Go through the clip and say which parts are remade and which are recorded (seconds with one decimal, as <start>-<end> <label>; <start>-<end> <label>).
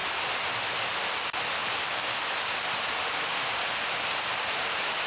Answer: 0.0-2.9 recorded; 2.9-5.1 remade